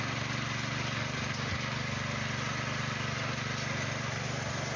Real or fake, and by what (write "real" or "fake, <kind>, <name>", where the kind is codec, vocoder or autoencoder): real